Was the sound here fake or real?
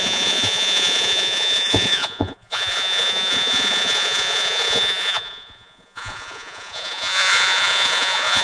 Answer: fake